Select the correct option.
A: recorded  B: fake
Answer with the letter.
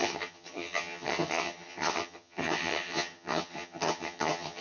B